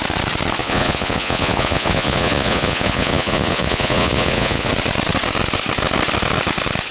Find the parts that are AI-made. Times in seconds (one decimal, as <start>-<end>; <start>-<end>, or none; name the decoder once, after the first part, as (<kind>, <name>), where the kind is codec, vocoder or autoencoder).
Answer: 0.6-4.7 (vocoder, Vocos)